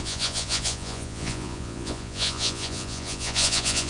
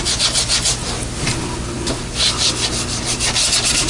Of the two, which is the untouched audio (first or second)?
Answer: second